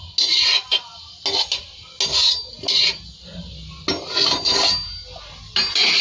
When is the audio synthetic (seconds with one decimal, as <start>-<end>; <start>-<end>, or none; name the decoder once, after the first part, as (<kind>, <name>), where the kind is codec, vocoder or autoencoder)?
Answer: none